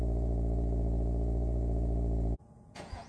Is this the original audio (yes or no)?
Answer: no